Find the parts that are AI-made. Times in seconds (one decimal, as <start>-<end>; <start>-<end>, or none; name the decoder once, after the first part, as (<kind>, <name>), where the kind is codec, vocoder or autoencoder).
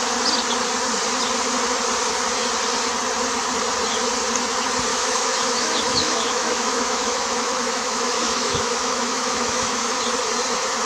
4.9-10.0 (autoencoder, DAC-VAE)